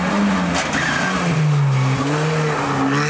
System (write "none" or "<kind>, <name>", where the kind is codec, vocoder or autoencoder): none